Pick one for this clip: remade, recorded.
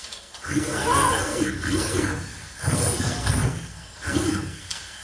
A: remade